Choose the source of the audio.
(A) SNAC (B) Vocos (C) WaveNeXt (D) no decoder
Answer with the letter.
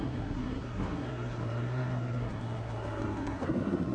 A